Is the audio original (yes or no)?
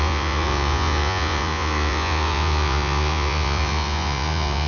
no